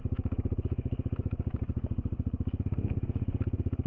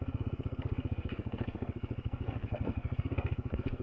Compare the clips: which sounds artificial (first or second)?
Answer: second